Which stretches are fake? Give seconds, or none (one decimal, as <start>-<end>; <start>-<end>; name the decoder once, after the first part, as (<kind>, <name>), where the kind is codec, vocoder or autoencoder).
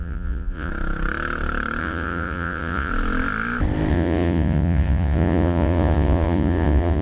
0.0-0.7 (vocoder, Vocos); 1.8-2.9; 3.9-7.0